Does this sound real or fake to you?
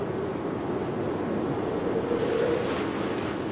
real